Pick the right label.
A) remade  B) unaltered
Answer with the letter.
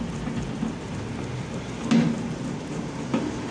B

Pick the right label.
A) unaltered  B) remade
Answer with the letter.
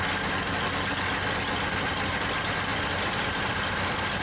A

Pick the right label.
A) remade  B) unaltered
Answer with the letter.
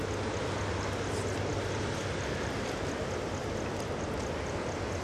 B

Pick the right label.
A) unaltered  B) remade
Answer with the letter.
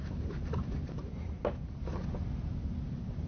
A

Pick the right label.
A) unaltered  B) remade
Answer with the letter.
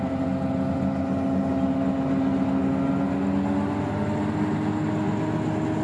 A